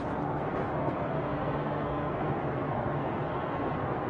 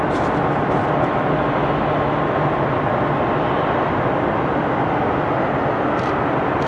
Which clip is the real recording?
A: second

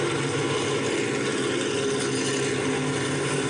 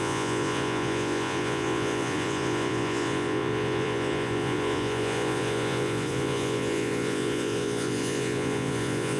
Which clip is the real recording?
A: first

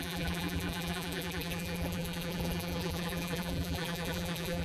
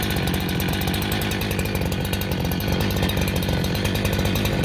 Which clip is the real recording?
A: second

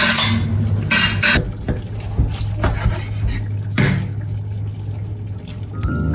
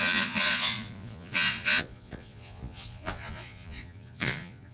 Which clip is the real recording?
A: first